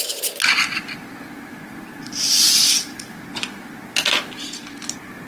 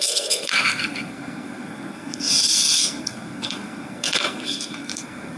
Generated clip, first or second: second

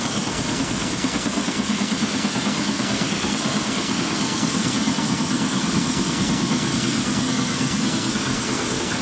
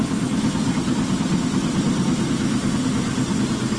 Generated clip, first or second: first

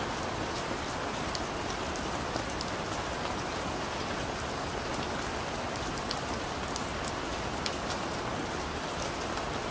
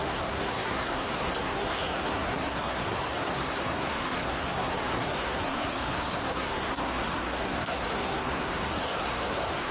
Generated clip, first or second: second